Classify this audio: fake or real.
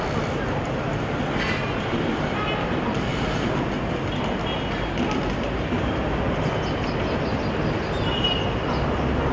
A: real